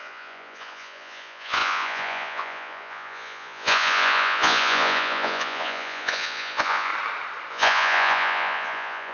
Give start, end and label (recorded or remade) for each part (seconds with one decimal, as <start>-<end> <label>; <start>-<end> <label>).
0.0-6.9 remade; 6.9-7.5 recorded; 7.5-9.1 remade